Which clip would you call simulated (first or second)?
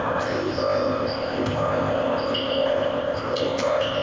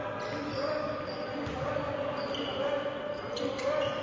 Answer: first